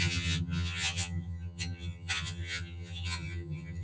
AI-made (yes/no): yes